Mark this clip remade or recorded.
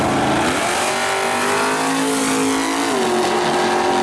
recorded